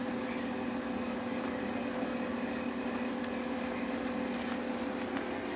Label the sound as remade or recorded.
recorded